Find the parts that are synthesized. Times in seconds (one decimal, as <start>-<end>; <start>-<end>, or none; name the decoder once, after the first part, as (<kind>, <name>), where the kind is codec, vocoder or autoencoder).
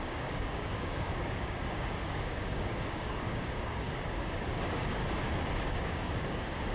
0.0-5.0 (codec, DAC); 5.7-6.7